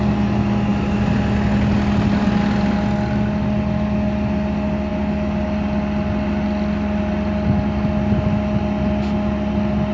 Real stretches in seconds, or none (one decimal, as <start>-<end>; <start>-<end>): 0.0-9.9